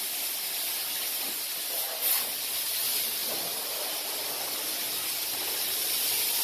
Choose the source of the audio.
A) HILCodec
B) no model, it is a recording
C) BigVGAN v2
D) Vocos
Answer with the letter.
B